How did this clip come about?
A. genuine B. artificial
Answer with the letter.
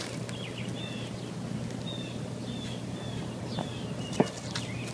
A